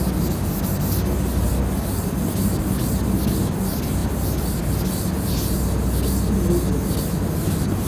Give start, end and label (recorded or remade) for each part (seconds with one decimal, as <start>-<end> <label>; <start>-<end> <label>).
0.0-4.0 recorded; 4.0-5.3 remade; 5.3-7.9 recorded